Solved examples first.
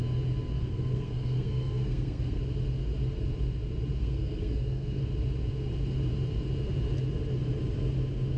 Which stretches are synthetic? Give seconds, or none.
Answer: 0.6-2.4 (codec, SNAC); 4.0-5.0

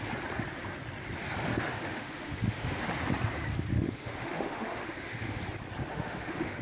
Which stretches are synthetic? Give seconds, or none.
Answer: 1.5-2.8 (autoencoder, DAC-VAE); 3.7-5.4; 5.9-6.6